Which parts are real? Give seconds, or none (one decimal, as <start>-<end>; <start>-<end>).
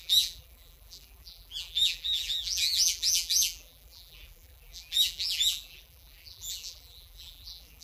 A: none